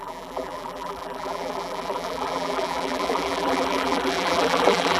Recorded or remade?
remade